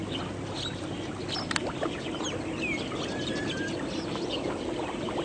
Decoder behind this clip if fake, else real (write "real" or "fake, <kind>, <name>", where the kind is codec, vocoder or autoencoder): real